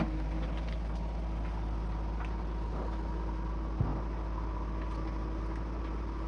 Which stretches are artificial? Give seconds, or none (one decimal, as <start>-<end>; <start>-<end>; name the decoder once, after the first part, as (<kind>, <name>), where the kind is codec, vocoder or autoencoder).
none